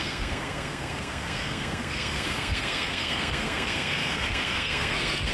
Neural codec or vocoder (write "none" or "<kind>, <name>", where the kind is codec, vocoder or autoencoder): codec, SNAC